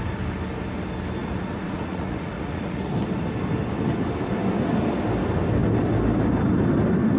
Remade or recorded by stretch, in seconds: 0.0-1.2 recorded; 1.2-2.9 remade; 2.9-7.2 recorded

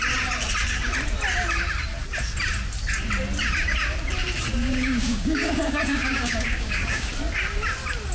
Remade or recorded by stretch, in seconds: 0.0-4.6 recorded; 4.6-7.1 remade; 7.1-8.1 recorded

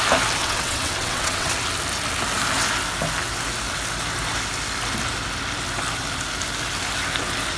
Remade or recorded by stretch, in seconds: 0.0-0.4 recorded; 0.4-1.5 remade; 1.5-7.6 recorded

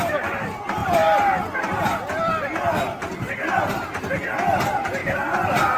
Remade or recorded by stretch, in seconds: 0.0-5.0 recorded; 5.0-5.8 remade

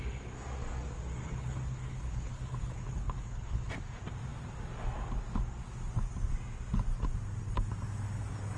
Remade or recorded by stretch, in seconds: 0.0-1.2 recorded; 1.2-3.7 remade; 3.7-8.6 recorded

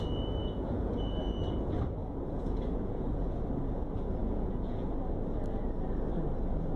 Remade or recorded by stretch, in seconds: 0.0-0.4 recorded; 0.4-0.9 remade; 0.9-2.0 recorded; 2.0-3.4 remade; 3.4-4.2 recorded; 4.2-4.9 remade; 4.9-6.8 recorded

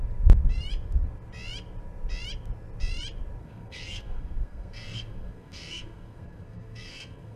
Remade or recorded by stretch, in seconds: 0.0-3.4 recorded; 3.4-7.4 remade

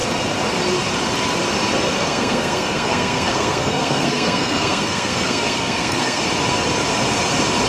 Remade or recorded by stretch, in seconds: 0.0-2.0 recorded; 2.0-6.2 remade; 6.2-7.7 recorded